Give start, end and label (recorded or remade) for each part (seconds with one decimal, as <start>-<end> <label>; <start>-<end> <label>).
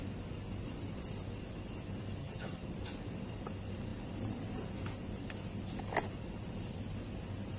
0.0-2.2 recorded; 2.2-2.7 remade; 2.7-7.6 recorded